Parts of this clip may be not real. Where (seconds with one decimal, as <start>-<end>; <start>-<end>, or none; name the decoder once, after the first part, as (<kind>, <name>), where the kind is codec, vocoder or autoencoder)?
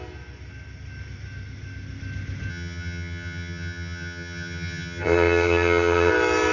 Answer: 2.5-6.1 (vocoder, HiFi-GAN)